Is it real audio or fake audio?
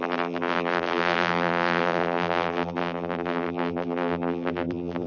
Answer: fake